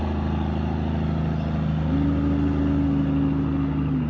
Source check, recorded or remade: recorded